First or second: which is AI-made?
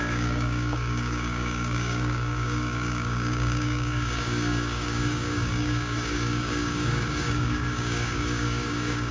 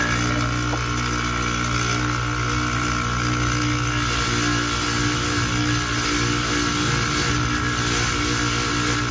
first